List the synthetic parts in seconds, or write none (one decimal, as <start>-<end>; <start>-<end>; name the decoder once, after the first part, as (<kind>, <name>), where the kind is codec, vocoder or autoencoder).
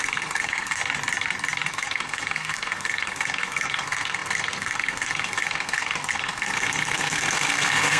0.0-0.8 (codec, SNAC); 1.7-8.0